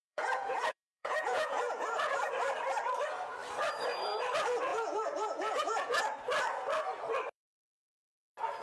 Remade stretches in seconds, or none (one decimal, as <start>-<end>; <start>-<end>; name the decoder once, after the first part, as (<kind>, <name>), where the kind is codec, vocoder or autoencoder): 0.0-2.3 (vocoder, Vocos); 4.7-6.0